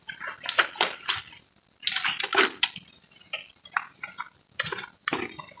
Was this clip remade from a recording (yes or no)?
no